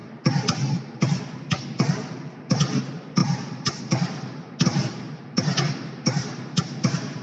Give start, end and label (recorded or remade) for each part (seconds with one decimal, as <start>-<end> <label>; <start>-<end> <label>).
0.0-2.8 recorded; 2.8-7.2 remade